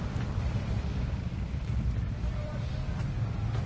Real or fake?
fake